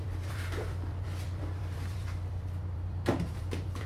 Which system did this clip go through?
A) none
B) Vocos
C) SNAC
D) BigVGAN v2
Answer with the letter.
D